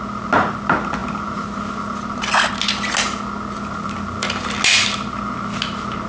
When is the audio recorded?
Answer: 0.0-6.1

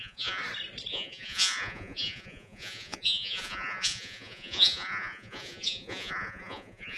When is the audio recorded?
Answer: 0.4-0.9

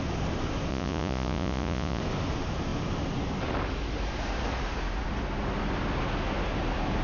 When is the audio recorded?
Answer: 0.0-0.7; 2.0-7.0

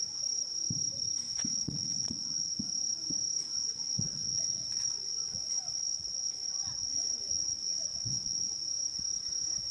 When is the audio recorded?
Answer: 0.0-1.5; 2.5-3.5; 8.6-9.7

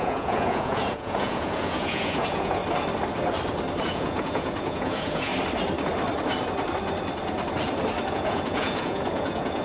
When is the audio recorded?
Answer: 2.6-3.8; 5.3-8.1

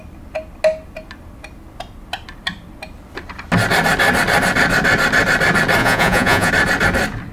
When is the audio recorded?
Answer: 0.0-5.8; 6.5-7.3